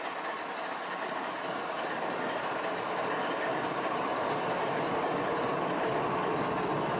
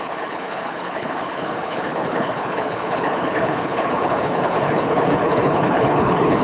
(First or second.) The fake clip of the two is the second